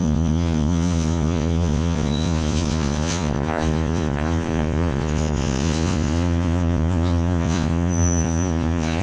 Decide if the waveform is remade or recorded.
remade